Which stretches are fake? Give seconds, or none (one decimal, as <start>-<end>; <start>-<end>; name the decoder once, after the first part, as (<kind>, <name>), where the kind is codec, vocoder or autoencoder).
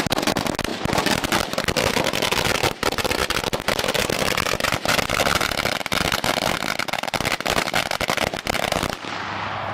none